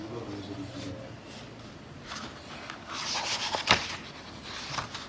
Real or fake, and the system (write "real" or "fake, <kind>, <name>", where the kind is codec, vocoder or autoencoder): real